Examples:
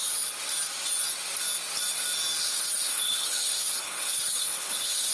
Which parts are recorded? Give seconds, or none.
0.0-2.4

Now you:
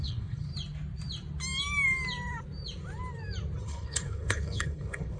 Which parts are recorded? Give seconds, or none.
0.5-3.6

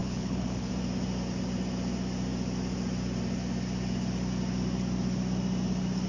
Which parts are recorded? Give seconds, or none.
0.7-6.1

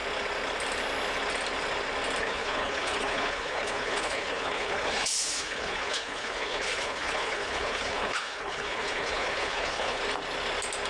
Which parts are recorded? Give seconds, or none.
0.0-2.2; 10.0-10.9

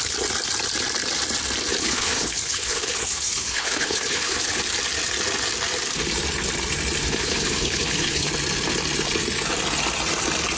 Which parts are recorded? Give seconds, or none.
0.0-1.7; 4.6-7.0; 8.3-10.6